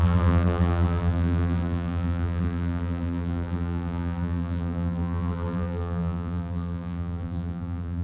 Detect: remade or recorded remade